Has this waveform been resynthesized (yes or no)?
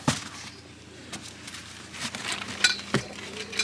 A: no